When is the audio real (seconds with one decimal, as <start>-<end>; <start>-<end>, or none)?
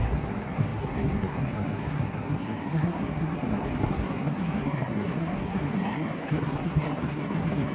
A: none